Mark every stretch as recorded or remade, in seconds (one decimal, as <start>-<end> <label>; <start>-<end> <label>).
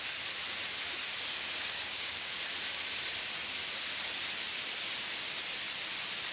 0.0-1.3 recorded; 1.3-2.3 remade; 2.3-6.3 recorded